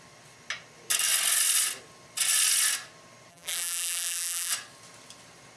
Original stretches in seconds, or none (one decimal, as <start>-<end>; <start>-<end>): 0.0-3.3; 4.5-5.6